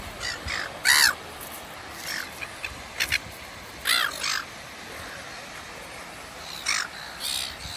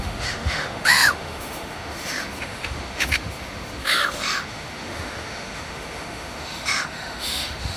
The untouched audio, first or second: first